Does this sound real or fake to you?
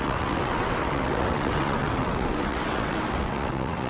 fake